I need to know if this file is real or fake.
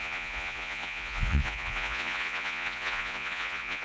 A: fake